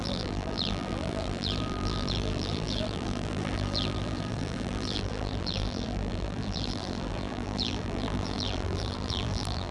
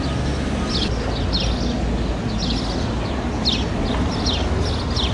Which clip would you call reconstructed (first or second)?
first